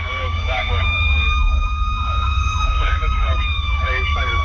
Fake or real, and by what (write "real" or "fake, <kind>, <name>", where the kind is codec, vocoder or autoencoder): fake, codec, DAC